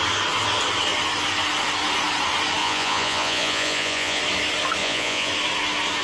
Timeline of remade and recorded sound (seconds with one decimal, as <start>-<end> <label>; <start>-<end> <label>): 0.0-2.6 recorded; 2.6-4.2 remade; 4.2-4.8 recorded; 4.8-5.3 remade; 5.3-6.0 recorded